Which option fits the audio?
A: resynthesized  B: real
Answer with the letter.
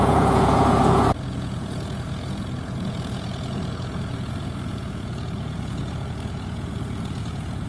A